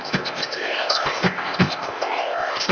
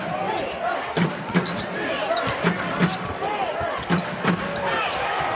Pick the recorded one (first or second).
second